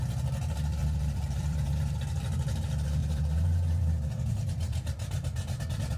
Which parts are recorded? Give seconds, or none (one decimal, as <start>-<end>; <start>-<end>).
0.0-0.8; 2.0-3.0